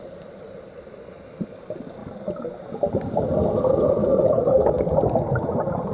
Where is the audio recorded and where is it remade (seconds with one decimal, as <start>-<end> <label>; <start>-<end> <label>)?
0.0-4.0 recorded; 4.0-4.8 remade; 4.8-5.9 recorded